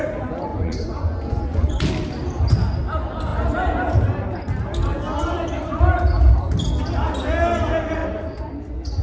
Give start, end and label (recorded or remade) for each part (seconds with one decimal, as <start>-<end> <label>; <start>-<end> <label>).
0.0-0.5 recorded; 0.5-1.7 remade; 1.7-9.0 recorded